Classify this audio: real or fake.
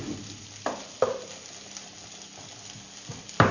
real